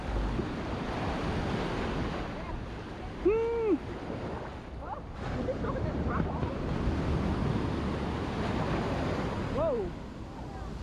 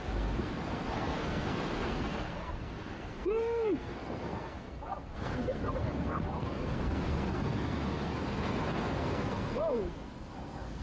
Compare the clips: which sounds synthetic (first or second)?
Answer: second